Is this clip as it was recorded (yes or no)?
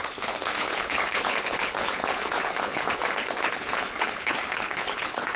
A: no